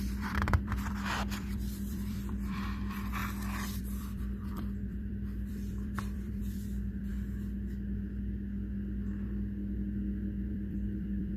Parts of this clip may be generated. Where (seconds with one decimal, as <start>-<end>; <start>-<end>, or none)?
0.0-7.1; 10.5-11.4